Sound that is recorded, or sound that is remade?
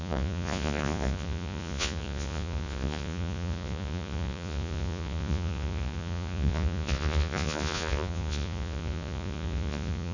remade